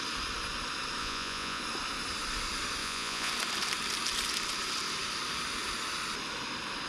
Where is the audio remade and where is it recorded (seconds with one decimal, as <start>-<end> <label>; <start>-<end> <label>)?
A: 0.0-1.0 recorded; 1.0-1.6 remade; 1.6-2.8 recorded; 2.8-3.3 remade; 3.3-6.9 recorded